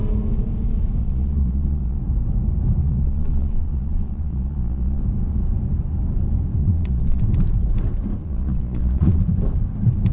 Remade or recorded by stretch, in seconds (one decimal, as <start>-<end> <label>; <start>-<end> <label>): 0.0-1.0 recorded; 1.0-2.0 remade; 2.0-2.8 recorded; 2.8-5.0 remade; 5.0-6.6 recorded; 6.6-7.2 remade; 7.2-8.2 recorded; 8.2-9.2 remade; 9.2-10.1 recorded